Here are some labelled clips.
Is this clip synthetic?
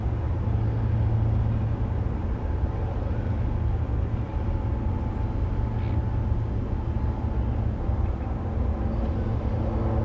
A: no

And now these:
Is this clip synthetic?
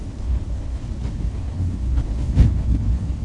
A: yes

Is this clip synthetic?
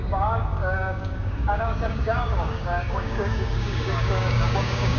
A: yes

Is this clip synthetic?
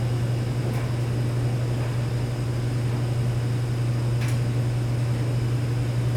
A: no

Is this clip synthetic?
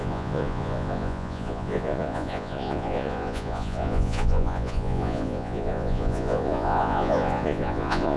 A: yes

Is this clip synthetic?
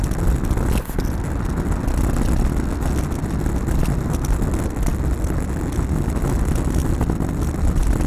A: no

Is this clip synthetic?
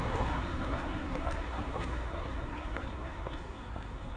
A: yes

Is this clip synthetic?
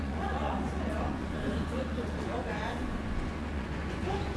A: yes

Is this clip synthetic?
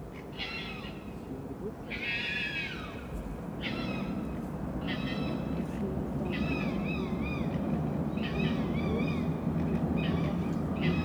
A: no